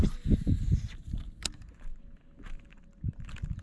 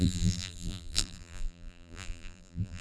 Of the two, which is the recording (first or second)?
first